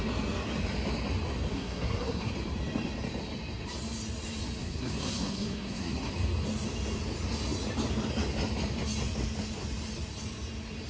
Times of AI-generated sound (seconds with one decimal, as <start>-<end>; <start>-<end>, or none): 1.5-2.3; 4.6-6.1